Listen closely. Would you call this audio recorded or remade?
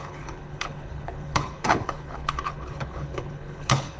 remade